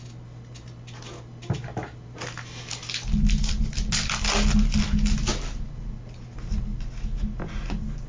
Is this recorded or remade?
recorded